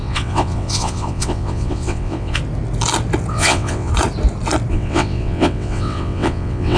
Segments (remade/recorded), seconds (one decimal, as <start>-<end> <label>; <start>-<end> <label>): 0.0-2.4 remade; 2.4-3.3 recorded; 3.3-3.9 remade; 3.9-4.7 recorded; 4.7-6.8 remade

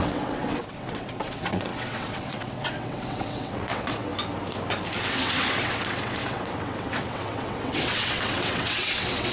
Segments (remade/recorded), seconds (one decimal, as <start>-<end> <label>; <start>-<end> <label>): 0.0-4.1 remade; 4.1-5.1 recorded; 5.1-9.3 remade

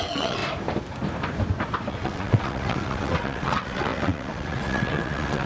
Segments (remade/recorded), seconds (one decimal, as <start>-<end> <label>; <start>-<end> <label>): 0.0-0.4 remade; 0.4-1.9 recorded; 1.9-5.5 remade

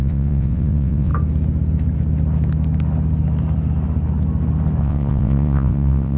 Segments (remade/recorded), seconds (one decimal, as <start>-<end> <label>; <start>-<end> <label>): 0.0-1.1 remade; 1.1-4.8 recorded; 4.8-6.2 remade

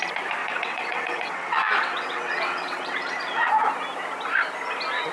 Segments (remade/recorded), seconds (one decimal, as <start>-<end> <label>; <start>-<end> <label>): 0.0-0.4 recorded; 0.4-3.5 remade; 3.5-5.1 recorded

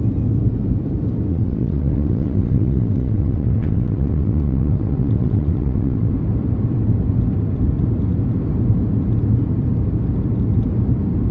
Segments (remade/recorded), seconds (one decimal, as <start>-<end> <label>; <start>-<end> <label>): 0.0-1.3 recorded; 1.3-6.1 remade; 6.1-11.3 recorded

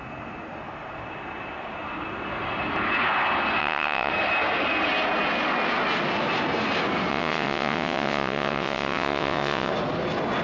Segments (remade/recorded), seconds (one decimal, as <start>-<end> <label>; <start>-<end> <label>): 0.0-3.6 recorded; 3.6-4.1 remade; 4.1-7.1 recorded; 7.1-9.7 remade; 9.7-10.4 recorded

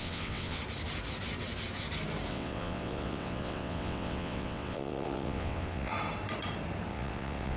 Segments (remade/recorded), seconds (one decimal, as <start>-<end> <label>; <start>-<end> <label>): 0.0-0.6 remade; 0.6-2.3 recorded; 2.3-5.9 remade; 5.9-6.9 recorded; 6.9-7.6 remade